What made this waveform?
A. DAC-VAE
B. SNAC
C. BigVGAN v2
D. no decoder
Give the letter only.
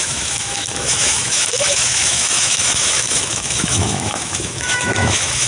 A